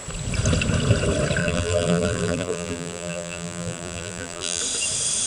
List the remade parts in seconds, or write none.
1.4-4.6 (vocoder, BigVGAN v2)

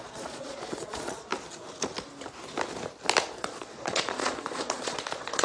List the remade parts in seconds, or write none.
0.0-1.3 (vocoder, Vocos); 3.3-5.4

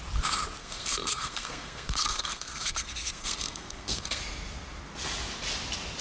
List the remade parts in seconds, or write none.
0.6-4.2 (codec, SNAC)

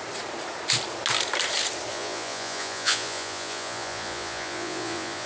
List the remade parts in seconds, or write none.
1.9-5.3 (vocoder, Vocos)

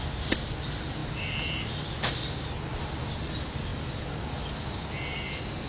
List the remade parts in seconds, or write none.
1.0-1.7 (vocoder, BigVGAN v2); 3.7-4.3

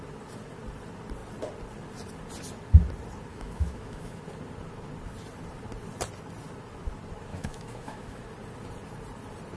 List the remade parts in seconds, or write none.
3.3-4.2 (autoencoder, DAC-VAE); 7.3-8.2

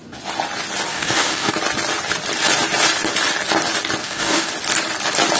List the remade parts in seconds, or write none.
0.9-1.5 (codec, DAC); 4.0-4.5

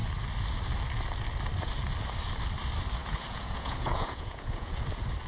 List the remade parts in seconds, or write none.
3.0-4.8 (vocoder, Vocos)